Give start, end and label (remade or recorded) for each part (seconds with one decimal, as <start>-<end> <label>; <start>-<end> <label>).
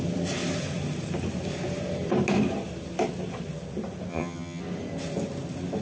0.0-4.1 recorded; 4.1-4.6 remade; 4.6-5.8 recorded